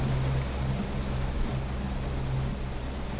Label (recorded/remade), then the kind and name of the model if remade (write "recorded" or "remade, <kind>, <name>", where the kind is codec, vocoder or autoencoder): recorded